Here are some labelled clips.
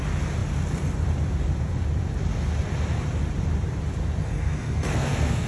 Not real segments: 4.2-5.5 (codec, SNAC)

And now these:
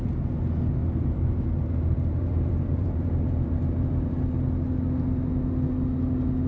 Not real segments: 0.8-4.1 (vocoder, BigVGAN v2)

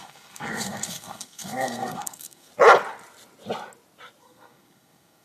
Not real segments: 0.0-2.5 (codec, SNAC); 4.2-5.2

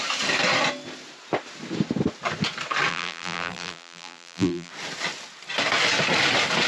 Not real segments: 2.9-4.7 (vocoder, BigVGAN v2)

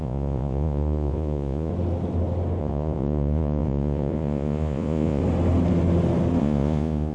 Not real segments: 0.0-1.7 (vocoder, Vocos); 2.6-5.2; 6.4-7.1

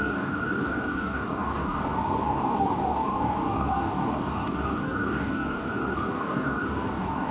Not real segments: 0.0-7.3 (codec, DAC)